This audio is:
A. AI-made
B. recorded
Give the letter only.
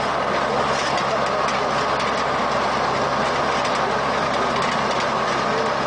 B